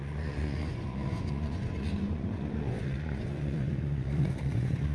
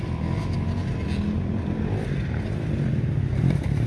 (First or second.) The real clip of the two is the second